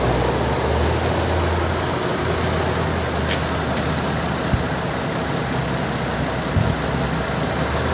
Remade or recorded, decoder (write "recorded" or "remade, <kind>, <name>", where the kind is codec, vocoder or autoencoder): recorded